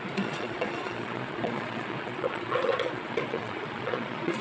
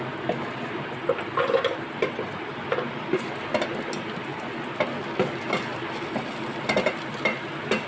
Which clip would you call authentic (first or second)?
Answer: second